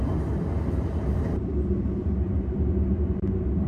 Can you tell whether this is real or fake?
fake